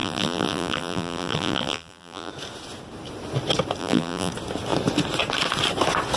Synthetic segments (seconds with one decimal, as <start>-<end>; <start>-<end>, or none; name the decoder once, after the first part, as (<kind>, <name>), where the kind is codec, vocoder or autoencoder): 0.0-2.3 (vocoder, BigVGAN v2); 3.8-4.3